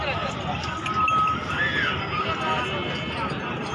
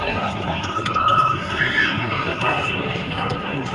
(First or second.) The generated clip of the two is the second